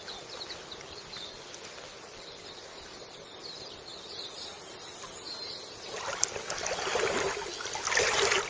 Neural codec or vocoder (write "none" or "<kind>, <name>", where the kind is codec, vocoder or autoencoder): none